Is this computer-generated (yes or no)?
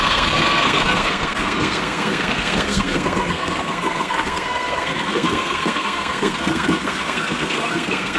yes